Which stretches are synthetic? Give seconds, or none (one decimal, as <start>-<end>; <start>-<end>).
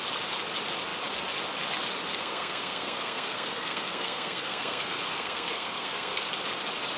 2.1-6.3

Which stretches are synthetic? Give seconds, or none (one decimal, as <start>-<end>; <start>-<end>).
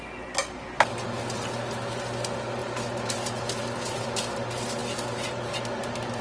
none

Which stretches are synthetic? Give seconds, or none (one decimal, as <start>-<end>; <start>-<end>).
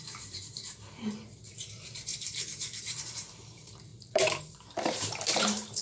0.0-5.8